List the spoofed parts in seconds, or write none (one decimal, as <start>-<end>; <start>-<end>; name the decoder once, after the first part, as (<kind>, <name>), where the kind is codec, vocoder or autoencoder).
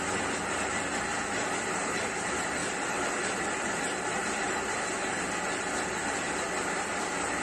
2.6-3.8 (vocoder, BigVGAN v2)